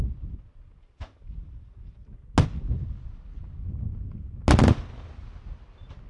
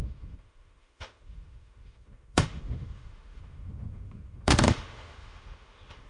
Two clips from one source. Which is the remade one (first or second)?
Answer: second